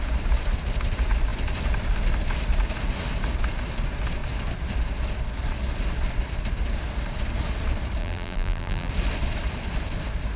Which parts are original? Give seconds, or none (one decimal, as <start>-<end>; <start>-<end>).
0.0-8.0; 8.9-10.4